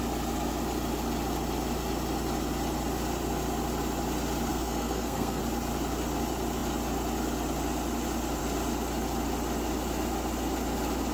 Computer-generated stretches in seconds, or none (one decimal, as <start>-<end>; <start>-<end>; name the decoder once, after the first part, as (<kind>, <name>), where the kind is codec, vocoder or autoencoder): 4.5-5.4 (codec, SNAC)